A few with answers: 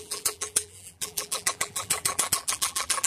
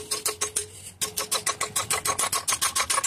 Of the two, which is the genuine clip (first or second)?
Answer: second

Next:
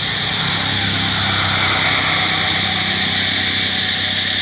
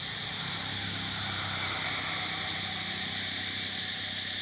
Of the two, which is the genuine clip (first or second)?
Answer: first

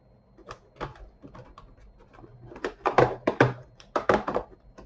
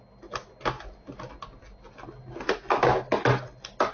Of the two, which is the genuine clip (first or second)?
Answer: second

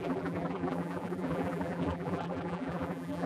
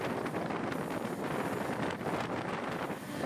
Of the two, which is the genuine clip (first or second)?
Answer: second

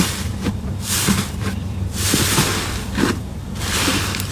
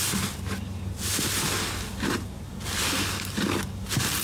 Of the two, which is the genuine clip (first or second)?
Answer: second